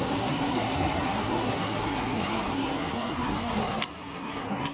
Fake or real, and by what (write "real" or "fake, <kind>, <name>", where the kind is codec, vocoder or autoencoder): fake, codec, SNAC